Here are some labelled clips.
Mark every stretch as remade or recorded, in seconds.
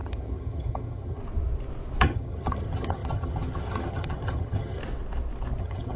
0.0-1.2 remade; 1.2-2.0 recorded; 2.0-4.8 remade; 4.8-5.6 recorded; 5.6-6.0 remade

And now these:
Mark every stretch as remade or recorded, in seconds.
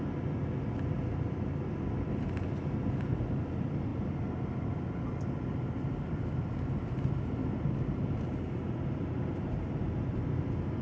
0.0-10.8 recorded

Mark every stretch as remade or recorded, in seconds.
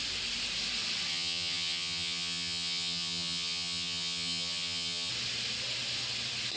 0.0-1.1 recorded; 1.1-5.1 remade; 5.1-6.6 recorded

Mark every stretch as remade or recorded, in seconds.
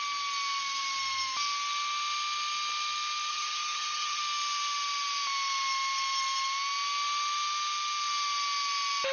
0.0-3.3 recorded; 3.3-4.2 remade; 4.2-9.1 recorded